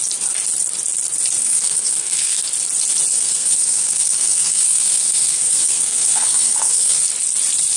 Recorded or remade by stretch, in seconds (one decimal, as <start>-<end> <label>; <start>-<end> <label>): 0.0-1.4 recorded; 1.4-2.4 remade; 2.4-3.1 recorded; 3.1-7.1 remade; 7.1-7.8 recorded